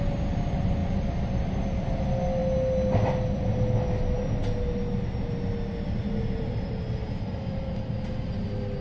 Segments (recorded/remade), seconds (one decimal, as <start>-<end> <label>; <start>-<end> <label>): 0.0-8.8 recorded